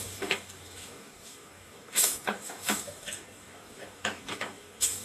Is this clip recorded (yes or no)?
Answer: no